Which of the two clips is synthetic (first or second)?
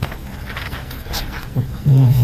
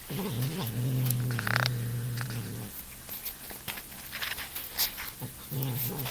first